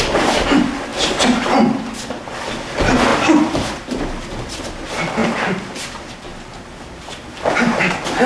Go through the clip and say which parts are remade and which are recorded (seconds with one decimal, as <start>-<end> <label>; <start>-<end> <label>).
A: 0.0-8.3 recorded